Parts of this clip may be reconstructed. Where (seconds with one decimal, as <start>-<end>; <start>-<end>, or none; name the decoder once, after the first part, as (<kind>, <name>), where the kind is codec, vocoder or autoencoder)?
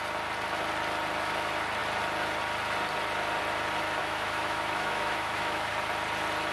4.0-5.7 (autoencoder, DAC-VAE)